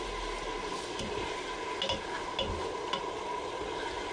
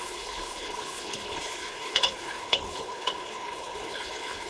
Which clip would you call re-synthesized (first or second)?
second